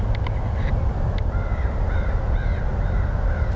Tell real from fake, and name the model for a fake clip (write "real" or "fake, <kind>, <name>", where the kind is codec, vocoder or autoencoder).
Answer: real